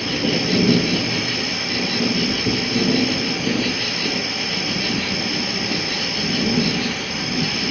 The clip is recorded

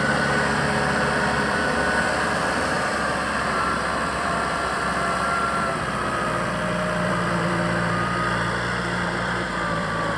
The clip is remade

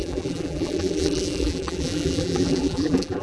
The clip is remade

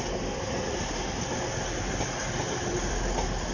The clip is recorded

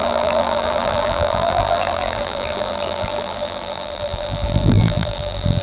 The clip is remade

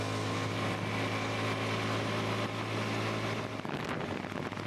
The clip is recorded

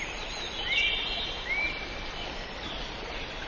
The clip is remade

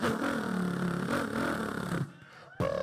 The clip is recorded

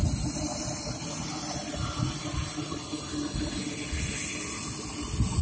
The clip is recorded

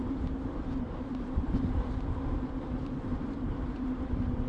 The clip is remade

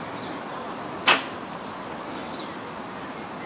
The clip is recorded